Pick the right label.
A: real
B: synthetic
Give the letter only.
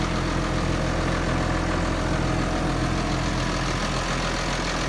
A